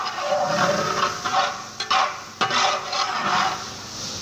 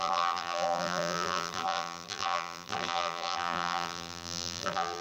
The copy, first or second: second